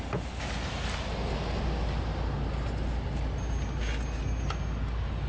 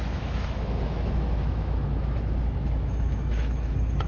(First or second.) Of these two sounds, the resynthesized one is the second